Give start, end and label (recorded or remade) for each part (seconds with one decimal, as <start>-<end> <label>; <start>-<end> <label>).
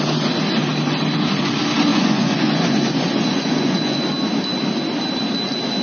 0.0-1.9 recorded; 1.9-4.0 remade; 4.0-5.8 recorded